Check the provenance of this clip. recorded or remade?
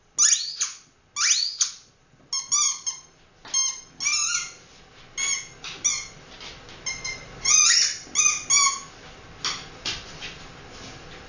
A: recorded